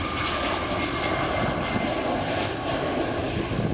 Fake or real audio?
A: real